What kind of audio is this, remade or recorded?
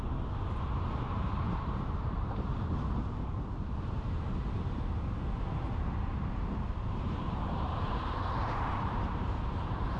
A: remade